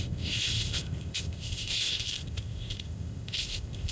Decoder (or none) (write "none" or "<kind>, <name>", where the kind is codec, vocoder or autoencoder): codec, ZipCodec